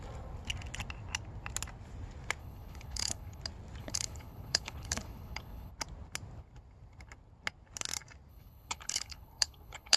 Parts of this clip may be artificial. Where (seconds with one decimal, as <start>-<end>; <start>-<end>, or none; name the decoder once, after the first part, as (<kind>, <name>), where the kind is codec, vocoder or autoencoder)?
2.4-3.4 (codec, HILCodec); 3.8-5.7; 8.3-10.0